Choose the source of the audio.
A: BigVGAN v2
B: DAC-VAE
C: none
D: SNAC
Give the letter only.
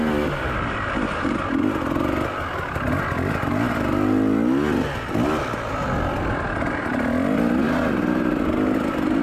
C